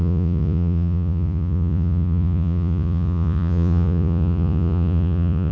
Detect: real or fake fake